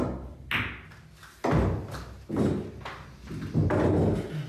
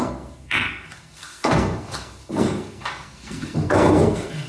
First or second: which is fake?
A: second